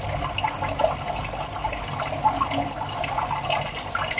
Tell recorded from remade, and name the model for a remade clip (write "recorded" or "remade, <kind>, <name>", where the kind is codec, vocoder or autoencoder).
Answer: recorded